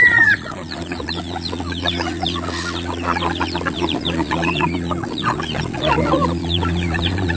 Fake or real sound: fake